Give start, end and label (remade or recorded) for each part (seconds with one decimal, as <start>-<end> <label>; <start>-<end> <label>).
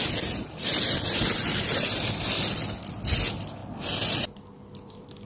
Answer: 0.0-5.2 recorded